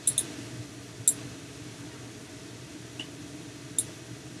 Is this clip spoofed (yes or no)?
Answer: no